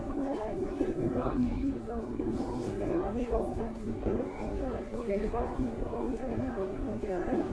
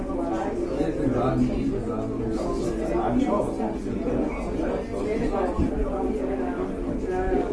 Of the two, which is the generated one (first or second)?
first